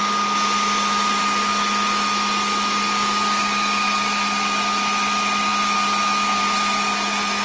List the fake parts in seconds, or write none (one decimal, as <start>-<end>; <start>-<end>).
none